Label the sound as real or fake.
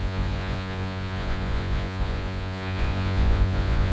fake